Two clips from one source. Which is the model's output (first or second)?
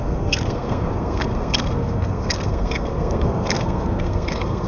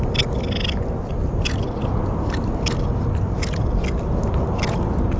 first